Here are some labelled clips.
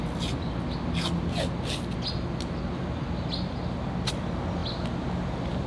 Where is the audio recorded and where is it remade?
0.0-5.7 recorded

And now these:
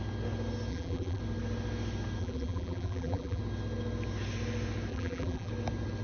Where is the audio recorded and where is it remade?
0.0-0.7 recorded; 0.7-1.2 remade; 1.2-2.2 recorded; 2.2-3.4 remade; 3.4-4.9 recorded; 4.9-5.5 remade; 5.5-6.0 recorded